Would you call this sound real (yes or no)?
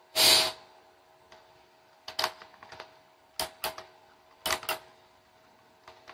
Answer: yes